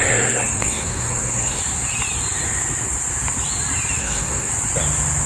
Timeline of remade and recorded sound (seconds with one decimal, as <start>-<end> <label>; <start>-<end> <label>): 0.0-1.6 remade; 1.6-4.0 recorded; 4.0-4.5 remade; 4.5-5.3 recorded